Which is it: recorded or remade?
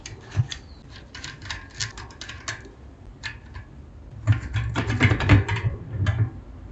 recorded